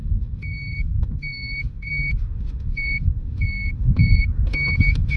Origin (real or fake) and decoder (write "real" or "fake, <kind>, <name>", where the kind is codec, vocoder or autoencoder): fake, autoencoder, DAC-VAE